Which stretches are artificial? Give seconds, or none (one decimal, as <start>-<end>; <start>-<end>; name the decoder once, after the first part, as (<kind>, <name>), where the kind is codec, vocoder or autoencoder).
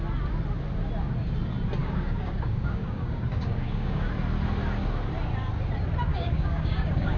1.8-4.1 (codec, DAC); 6.1-7.2